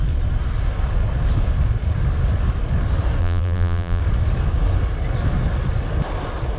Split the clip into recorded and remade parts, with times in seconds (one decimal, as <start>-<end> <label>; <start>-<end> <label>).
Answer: 0.0-3.2 recorded; 3.2-4.0 remade; 4.0-6.6 recorded